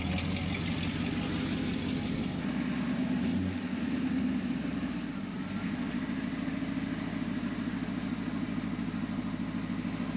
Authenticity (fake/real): real